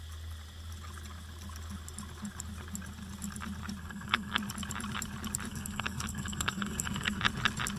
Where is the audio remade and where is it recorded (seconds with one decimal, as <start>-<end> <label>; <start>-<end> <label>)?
0.0-3.8 recorded; 3.8-4.4 remade; 4.4-5.5 recorded; 5.5-7.2 remade; 7.2-7.8 recorded